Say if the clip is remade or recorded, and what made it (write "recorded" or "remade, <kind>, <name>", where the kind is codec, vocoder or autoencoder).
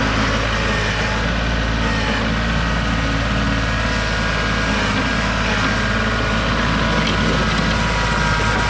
recorded